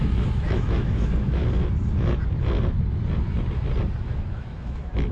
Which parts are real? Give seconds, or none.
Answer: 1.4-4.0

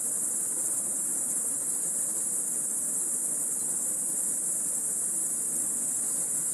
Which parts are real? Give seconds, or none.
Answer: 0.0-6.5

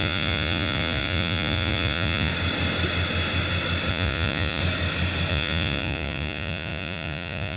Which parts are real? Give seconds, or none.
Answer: 2.3-3.9; 4.6-5.3

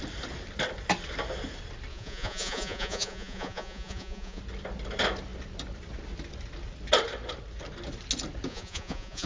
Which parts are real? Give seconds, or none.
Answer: 0.0-1.9; 4.4-8.5

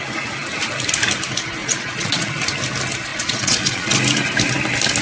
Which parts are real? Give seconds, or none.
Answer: 0.0-1.6; 2.3-3.1; 4.0-5.0